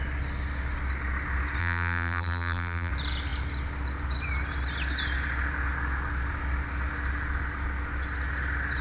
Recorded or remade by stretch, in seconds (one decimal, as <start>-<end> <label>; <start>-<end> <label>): 0.0-1.6 recorded; 1.6-2.9 remade; 2.9-8.8 recorded